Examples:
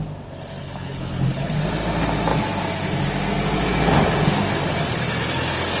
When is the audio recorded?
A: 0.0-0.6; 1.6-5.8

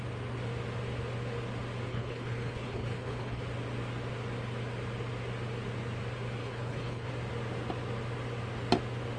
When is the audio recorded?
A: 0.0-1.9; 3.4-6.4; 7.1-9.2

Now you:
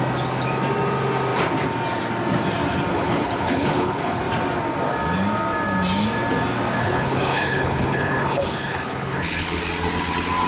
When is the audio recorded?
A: 0.0-2.9; 4.2-6.8; 9.6-10.5

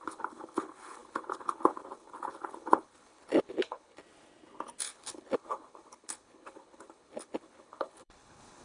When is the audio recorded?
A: 4.0-4.8

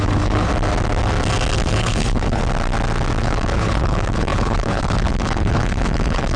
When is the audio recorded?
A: 0.5-1.7; 2.4-3.2

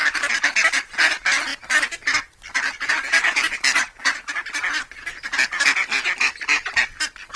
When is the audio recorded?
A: 0.0-7.4

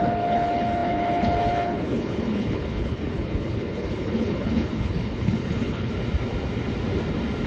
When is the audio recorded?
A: 5.9-7.5